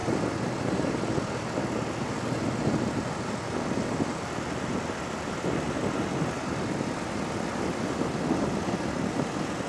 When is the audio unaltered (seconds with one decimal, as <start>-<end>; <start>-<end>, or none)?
0.0-9.7